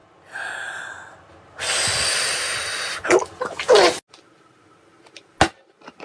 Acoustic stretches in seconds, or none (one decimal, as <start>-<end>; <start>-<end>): 0.0-6.0